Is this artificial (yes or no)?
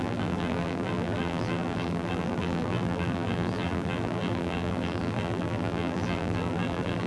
yes